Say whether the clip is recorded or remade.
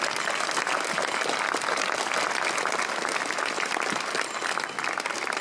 recorded